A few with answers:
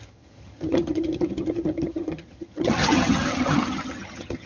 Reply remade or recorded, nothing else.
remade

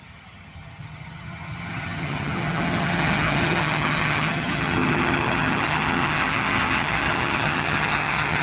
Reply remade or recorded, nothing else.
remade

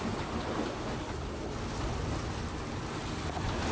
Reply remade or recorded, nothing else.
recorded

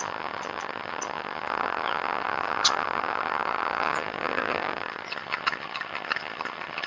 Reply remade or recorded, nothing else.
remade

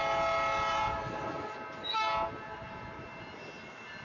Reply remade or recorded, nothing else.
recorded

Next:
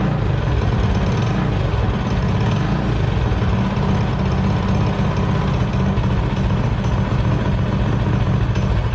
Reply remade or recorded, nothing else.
recorded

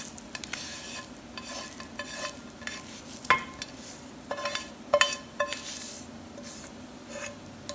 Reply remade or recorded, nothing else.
recorded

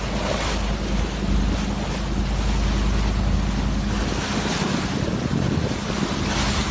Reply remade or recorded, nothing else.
recorded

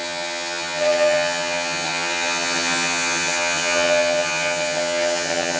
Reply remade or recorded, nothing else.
remade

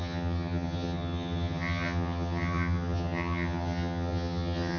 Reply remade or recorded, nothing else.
remade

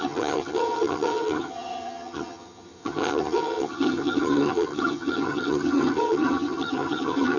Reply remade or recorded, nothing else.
remade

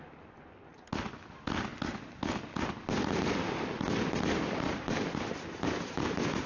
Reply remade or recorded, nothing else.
recorded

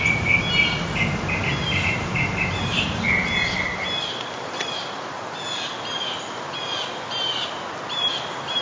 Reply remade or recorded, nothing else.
recorded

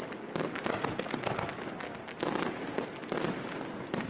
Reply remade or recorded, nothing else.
recorded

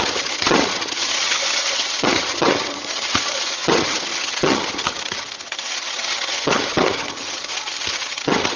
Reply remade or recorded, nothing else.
remade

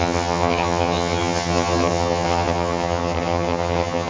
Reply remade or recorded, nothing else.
remade